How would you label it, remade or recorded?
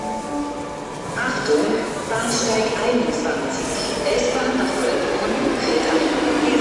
recorded